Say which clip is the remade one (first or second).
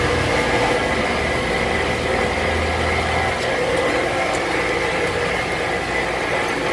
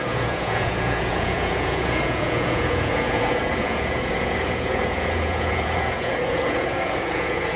second